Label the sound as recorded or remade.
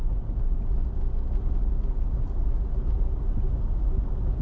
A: recorded